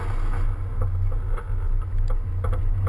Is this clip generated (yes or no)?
no